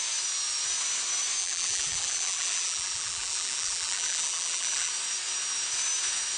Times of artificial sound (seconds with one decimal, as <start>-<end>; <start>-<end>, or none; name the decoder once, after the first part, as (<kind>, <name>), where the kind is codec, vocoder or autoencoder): 1.4-4.9 (vocoder, BigVGAN v2)